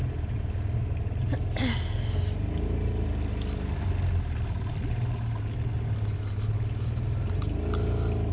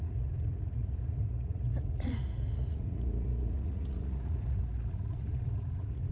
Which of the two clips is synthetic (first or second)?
second